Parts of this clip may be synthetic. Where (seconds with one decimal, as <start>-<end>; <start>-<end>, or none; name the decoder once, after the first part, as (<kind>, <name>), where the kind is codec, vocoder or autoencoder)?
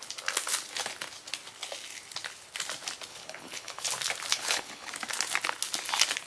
3.1-3.9 (codec, HILCodec); 4.3-4.9